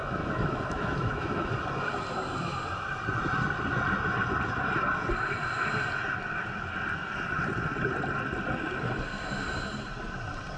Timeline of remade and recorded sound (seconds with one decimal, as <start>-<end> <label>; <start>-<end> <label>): 0.0-1.5 remade; 1.5-10.6 recorded